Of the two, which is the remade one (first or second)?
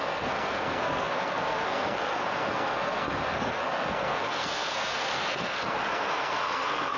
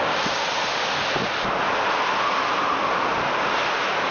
first